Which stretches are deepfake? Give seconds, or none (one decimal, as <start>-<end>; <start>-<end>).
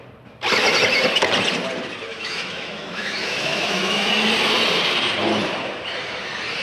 2.1-4.1